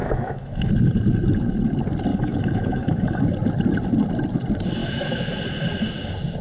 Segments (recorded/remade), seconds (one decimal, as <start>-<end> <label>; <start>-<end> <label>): 0.0-0.7 remade; 0.7-2.1 recorded; 2.1-3.2 remade; 3.2-4.8 recorded; 4.8-5.4 remade; 5.4-6.4 recorded